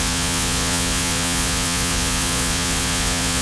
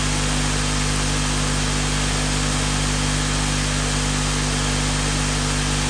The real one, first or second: second